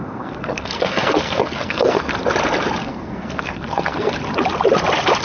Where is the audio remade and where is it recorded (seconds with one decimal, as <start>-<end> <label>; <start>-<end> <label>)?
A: 0.0-2.1 remade; 2.1-2.8 recorded; 2.8-4.2 remade; 4.2-5.2 recorded